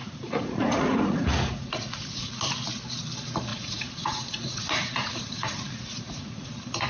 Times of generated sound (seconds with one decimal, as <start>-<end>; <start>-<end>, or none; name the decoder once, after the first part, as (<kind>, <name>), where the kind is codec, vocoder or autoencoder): 0.0-2.3 (vocoder, Vocos); 3.5-6.5